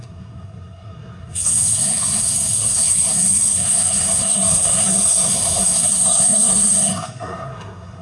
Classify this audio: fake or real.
fake